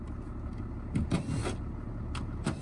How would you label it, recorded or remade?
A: recorded